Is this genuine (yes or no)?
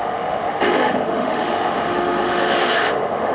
no